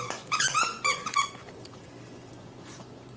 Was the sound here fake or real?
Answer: fake